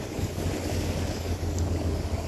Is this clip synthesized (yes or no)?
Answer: yes